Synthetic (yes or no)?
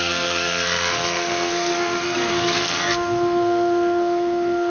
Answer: yes